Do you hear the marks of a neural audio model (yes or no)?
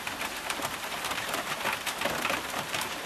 yes